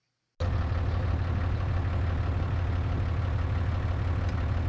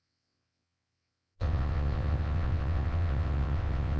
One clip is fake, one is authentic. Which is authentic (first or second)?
first